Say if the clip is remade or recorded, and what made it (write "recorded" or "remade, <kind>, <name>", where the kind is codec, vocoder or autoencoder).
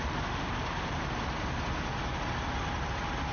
recorded